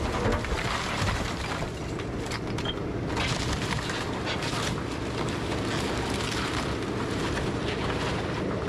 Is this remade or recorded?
recorded